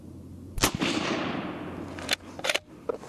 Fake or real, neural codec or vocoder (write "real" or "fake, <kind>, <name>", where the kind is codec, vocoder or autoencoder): real